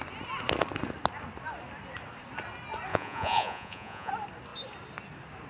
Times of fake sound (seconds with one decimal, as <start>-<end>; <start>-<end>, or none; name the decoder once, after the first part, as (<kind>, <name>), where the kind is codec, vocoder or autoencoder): 2.9-4.1 (vocoder, Vocos)